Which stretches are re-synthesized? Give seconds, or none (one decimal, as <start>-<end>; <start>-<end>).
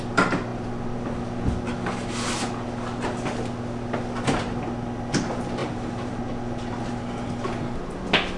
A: 5.6-6.2